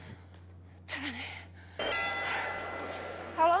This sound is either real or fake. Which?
real